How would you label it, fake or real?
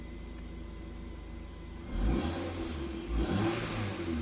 fake